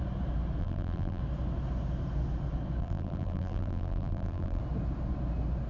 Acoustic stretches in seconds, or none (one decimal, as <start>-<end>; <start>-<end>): 0.0-0.6; 1.2-2.8; 4.6-5.7